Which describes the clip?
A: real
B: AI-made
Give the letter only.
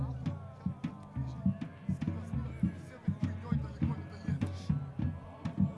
A